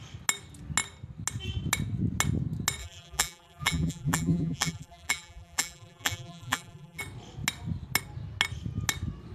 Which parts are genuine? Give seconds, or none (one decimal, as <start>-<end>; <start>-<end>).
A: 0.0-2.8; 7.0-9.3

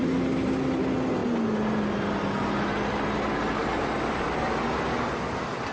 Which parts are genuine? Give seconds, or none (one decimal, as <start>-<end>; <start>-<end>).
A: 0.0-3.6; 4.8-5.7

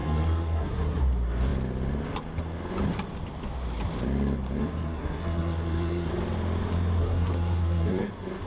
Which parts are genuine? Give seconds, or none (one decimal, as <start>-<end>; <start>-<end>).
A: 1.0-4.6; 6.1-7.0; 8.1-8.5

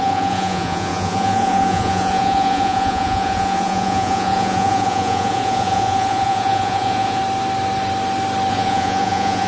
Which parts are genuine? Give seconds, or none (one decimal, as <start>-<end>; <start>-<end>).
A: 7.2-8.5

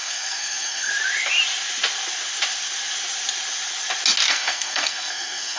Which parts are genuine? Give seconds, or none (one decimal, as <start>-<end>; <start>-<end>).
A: 0.9-4.3

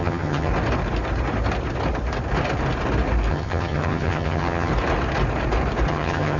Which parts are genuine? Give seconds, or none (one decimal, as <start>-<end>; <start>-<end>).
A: 0.5-3.3; 4.7-5.9

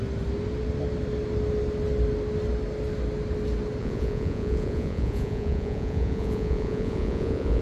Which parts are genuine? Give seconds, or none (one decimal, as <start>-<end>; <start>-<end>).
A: 0.0-3.8